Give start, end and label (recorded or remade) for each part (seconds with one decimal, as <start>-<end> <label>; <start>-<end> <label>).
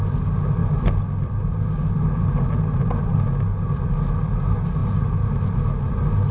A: 0.0-6.3 recorded